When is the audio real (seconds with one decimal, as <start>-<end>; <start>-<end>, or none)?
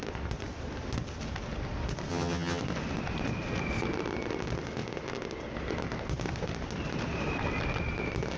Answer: 0.0-2.1; 2.6-8.4